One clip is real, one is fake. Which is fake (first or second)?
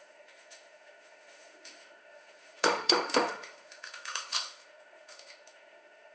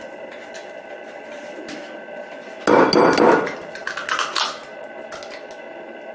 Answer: first